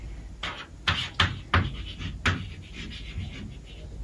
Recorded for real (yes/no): yes